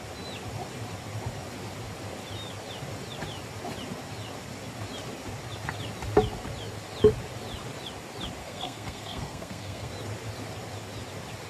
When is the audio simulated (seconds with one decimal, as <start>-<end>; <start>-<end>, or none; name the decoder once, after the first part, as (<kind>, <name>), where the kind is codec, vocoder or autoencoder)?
8.4-9.9 (codec, SNAC)